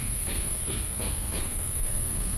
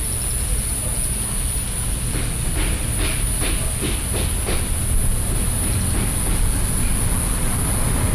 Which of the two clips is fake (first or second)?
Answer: first